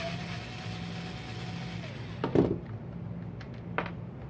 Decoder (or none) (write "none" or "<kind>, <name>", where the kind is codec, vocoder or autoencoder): none